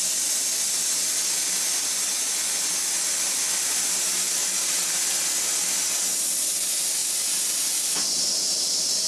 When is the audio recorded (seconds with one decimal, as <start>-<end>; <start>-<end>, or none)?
0.0-9.1